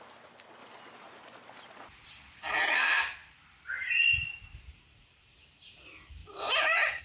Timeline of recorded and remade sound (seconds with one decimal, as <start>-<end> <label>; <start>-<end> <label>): 0.0-0.6 recorded; 0.6-2.6 remade; 2.6-3.2 recorded; 3.2-3.8 remade; 3.8-6.2 recorded; 6.2-7.0 remade